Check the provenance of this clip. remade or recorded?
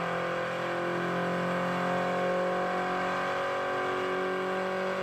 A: recorded